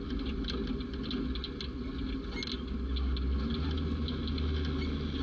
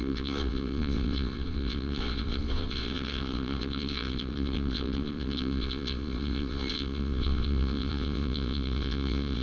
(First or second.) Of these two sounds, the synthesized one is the second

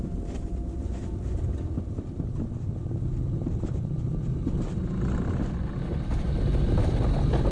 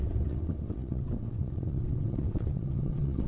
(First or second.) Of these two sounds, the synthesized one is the second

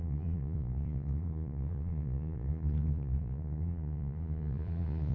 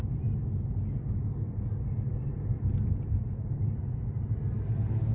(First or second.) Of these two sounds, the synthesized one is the first